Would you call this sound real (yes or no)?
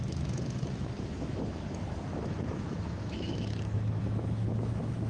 no